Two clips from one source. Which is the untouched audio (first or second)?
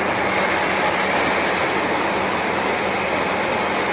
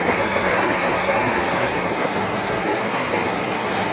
first